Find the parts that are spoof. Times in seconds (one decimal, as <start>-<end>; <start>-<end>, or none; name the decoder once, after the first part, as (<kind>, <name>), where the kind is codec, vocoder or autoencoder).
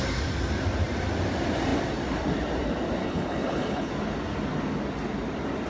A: 3.0-3.9 (codec, HILCodec)